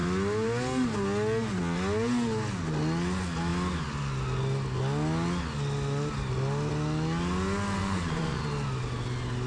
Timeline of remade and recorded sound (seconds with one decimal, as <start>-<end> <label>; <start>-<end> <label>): 0.0-7.8 recorded; 7.8-8.4 remade; 8.4-9.5 recorded